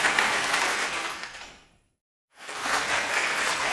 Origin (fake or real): fake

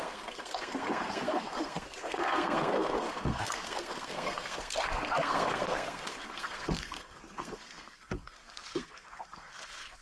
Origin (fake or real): fake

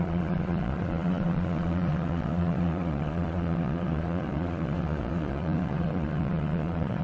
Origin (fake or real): fake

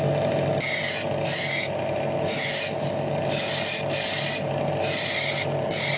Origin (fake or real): real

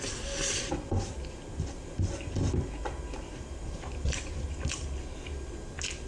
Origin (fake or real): real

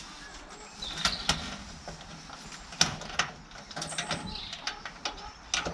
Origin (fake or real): real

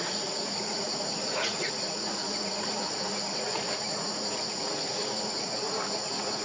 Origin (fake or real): fake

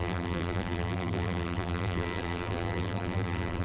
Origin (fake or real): fake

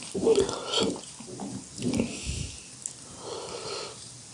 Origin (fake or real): real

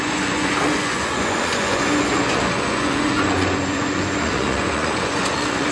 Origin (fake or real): fake